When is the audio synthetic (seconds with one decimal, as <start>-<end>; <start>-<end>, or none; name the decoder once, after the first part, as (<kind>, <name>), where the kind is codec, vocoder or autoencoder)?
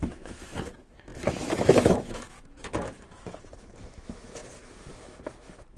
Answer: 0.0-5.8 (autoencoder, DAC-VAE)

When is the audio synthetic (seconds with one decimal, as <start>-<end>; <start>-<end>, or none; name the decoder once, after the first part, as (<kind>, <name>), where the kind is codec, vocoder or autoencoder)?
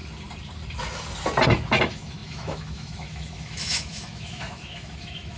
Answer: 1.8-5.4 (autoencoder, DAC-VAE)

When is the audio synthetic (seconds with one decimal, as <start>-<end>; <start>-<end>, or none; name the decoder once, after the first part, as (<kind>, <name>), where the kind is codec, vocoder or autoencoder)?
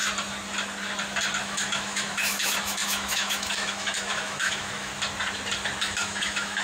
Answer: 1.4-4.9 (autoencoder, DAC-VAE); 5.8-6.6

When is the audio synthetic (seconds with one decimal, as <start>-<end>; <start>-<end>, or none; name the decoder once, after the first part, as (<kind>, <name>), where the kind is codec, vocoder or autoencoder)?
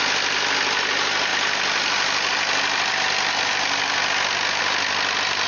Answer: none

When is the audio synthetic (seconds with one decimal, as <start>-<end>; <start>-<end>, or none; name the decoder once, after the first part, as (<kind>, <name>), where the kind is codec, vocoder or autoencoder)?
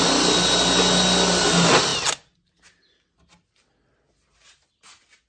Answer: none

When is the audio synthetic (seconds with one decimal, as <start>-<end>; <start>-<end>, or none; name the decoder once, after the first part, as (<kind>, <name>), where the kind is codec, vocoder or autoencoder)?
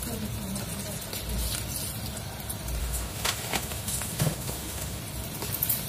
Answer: 2.8-5.0 (autoencoder, DAC-VAE)